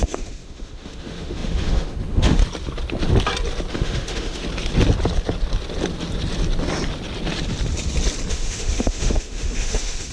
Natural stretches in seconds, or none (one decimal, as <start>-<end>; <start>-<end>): 2.4-3.7; 4.4-8.3